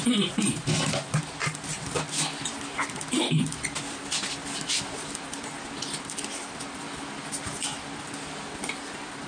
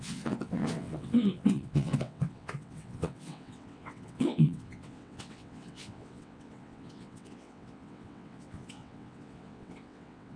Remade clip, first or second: second